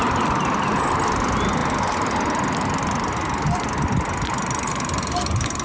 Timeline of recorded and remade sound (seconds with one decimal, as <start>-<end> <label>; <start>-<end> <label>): 0.0-5.6 recorded